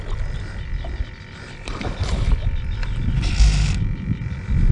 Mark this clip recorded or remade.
recorded